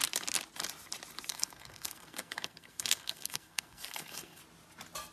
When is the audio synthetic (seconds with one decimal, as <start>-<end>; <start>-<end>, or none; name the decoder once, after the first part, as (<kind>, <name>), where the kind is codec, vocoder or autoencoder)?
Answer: 1.3-4.4 (codec, SNAC)